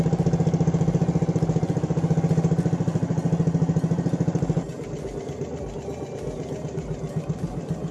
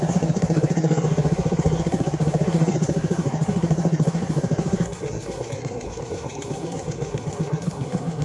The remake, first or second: second